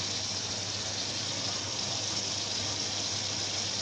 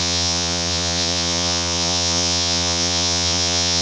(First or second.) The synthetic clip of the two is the second